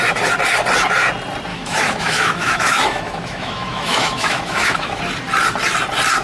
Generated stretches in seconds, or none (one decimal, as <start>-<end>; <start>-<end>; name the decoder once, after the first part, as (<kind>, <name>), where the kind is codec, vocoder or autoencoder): 1.5-5.0 (autoencoder, DAC-VAE)